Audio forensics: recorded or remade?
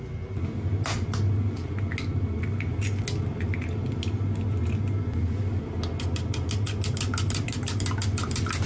recorded